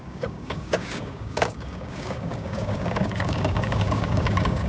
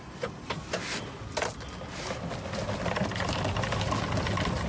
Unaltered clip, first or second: second